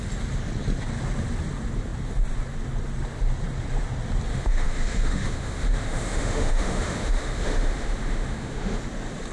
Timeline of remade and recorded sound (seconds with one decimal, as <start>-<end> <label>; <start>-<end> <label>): 0.0-4.3 recorded; 4.3-8.8 remade; 8.8-9.3 recorded